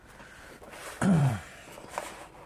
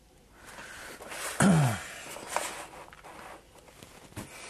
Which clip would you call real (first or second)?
second